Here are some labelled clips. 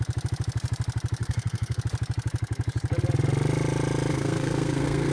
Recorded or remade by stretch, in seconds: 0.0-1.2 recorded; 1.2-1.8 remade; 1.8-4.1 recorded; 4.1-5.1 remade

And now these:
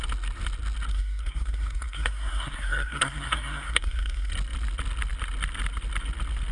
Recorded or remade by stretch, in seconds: 0.0-0.9 recorded; 0.9-4.3 remade; 4.3-6.5 recorded

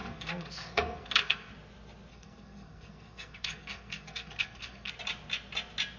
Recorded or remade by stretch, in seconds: 0.0-1.5 remade; 1.5-2.1 recorded; 2.1-4.9 remade; 4.9-6.0 recorded

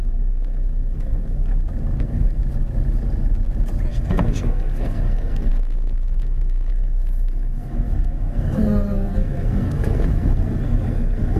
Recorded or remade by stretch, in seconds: 0.0-1.5 remade; 1.5-2.0 recorded; 2.0-2.4 remade; 2.4-3.9 recorded; 3.9-11.4 remade

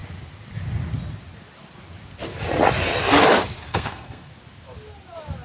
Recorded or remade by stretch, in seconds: 0.0-3.7 recorded; 3.7-4.3 remade; 4.3-5.4 recorded

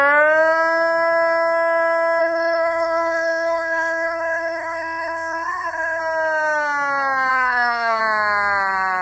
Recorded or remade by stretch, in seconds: 0.0-2.2 recorded; 2.2-6.0 remade; 6.0-7.3 recorded; 7.3-8.0 remade; 8.0-9.0 recorded

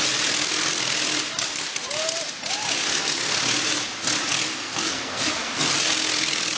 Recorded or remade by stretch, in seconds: 0.0-4.5 recorded; 4.5-5.6 remade; 5.6-6.6 recorded